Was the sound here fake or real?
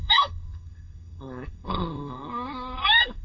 fake